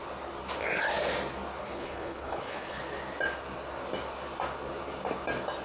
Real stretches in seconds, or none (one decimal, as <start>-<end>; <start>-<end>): 0.0-1.6; 2.8-5.6